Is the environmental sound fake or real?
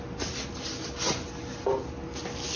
real